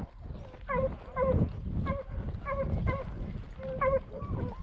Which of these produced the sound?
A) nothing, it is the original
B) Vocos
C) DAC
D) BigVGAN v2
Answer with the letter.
A